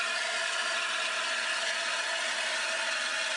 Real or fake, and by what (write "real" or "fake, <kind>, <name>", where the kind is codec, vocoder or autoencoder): real